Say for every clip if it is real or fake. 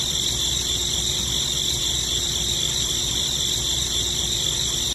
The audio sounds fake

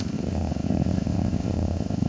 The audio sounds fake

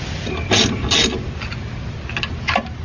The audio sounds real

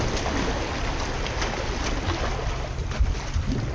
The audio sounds real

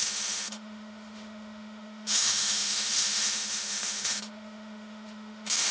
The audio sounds fake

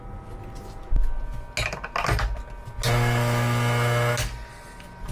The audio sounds real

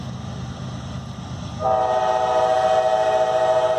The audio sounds real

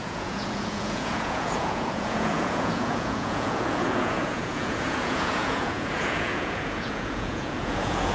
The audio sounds fake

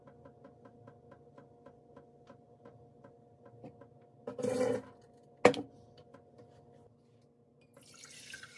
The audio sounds real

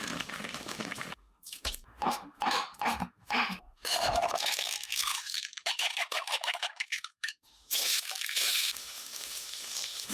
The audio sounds fake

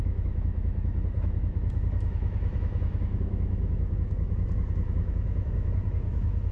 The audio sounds fake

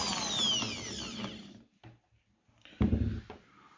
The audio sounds real